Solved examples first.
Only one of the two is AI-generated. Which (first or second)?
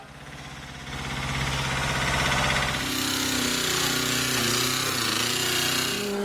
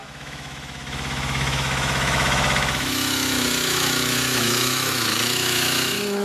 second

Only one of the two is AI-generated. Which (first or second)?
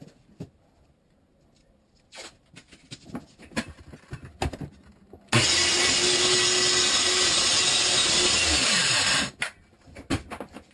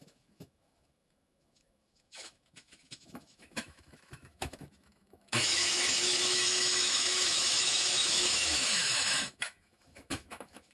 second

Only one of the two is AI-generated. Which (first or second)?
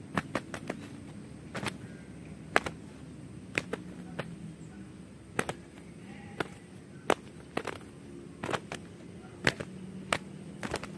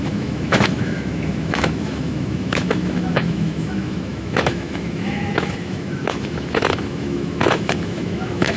second